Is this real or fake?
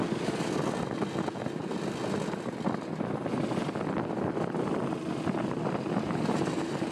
real